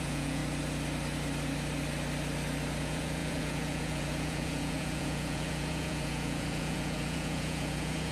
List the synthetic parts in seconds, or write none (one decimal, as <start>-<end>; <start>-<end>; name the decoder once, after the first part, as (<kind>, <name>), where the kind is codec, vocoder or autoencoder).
0.0-0.4 (vocoder, Vocos); 2.8-8.1